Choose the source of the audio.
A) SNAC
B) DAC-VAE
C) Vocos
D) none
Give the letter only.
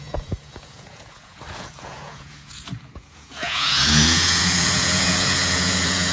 C